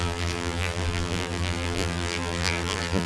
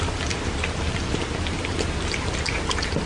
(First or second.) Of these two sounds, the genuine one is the second